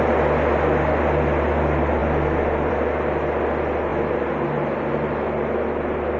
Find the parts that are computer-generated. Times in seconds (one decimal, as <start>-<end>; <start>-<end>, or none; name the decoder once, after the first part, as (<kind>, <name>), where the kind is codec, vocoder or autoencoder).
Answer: none